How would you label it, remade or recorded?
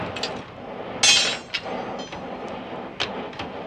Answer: recorded